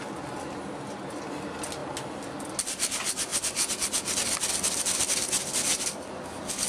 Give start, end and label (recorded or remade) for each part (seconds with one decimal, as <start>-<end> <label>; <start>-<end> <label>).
0.0-6.7 recorded